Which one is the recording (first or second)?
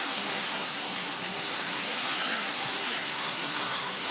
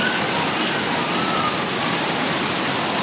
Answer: second